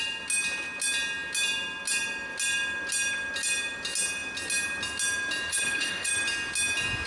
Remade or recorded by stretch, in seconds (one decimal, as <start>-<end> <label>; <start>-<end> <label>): 0.0-5.5 recorded; 5.5-6.1 remade; 6.1-7.1 recorded